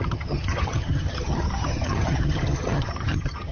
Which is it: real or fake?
fake